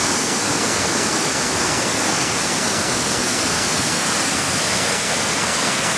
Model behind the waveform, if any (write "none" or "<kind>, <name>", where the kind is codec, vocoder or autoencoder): codec, SNAC